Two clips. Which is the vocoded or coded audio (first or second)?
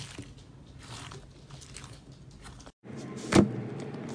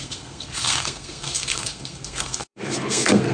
second